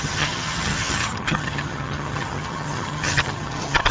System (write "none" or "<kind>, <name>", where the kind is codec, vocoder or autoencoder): vocoder, HiFi-GAN